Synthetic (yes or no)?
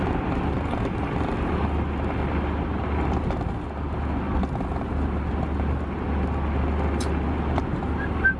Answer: no